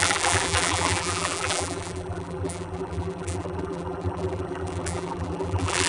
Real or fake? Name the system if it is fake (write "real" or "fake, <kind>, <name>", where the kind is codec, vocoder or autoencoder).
fake, vocoder, BigVGAN v2